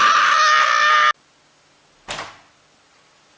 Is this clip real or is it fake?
real